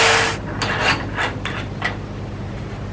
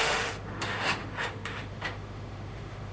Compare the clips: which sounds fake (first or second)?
second